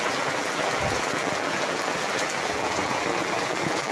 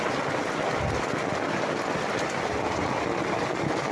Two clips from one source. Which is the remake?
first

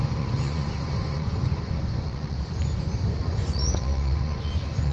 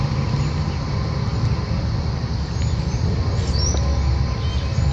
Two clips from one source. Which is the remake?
first